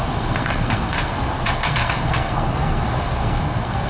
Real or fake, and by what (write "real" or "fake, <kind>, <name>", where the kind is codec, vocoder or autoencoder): fake, codec, SNAC